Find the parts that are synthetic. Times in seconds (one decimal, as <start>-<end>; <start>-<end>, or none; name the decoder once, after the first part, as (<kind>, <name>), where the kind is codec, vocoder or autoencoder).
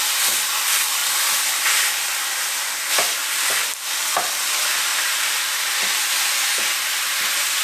4.9-6.8 (vocoder, BigVGAN v2)